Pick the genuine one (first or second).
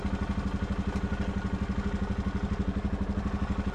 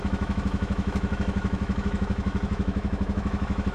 first